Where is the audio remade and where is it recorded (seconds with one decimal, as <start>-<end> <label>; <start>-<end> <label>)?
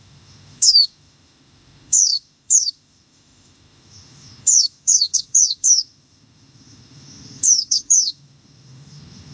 0.0-9.3 remade